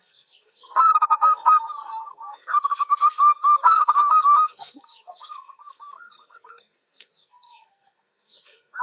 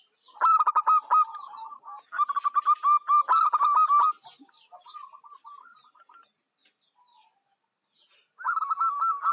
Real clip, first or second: second